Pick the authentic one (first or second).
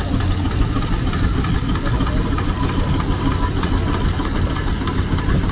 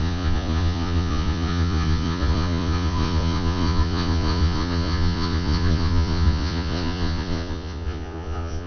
first